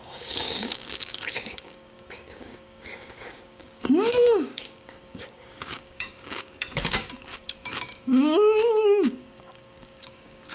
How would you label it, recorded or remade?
remade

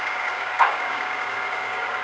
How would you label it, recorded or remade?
remade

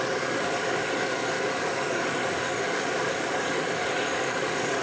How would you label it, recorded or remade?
remade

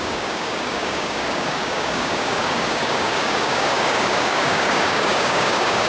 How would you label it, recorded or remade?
remade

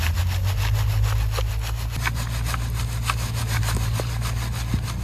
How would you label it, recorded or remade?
recorded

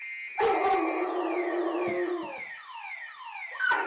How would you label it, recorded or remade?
recorded